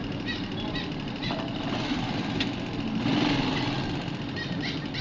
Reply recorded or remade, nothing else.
recorded